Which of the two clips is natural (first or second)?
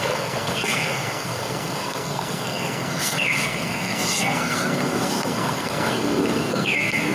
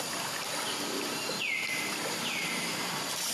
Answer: second